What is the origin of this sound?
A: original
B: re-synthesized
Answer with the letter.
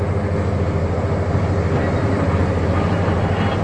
A